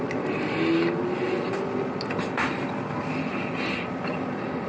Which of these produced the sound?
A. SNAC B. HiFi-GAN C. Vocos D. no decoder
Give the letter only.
D